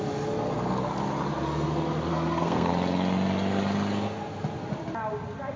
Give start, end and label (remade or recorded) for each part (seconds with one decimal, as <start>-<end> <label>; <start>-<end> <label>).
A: 0.0-2.1 recorded; 2.1-2.7 remade; 2.7-5.6 recorded